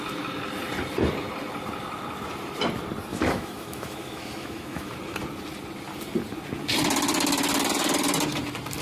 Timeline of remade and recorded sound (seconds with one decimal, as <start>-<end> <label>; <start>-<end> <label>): 0.0-3.1 recorded; 3.1-4.9 remade; 4.9-8.8 recorded